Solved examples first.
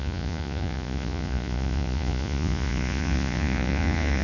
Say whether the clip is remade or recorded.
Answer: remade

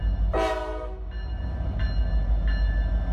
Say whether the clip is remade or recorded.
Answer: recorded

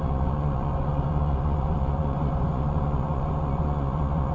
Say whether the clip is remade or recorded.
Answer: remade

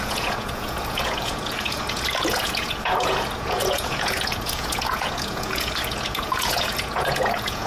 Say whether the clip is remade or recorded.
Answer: remade